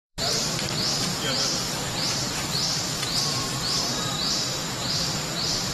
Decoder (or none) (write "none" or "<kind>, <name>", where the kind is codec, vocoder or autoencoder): vocoder, BigVGAN v2